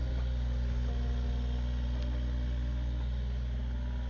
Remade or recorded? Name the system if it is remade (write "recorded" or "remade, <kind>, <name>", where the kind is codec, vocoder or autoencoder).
recorded